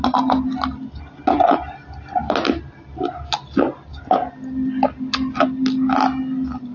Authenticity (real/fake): real